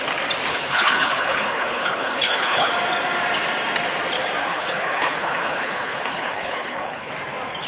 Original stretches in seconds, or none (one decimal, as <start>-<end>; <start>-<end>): 0.0-0.5; 2.7-4.4; 7.1-7.7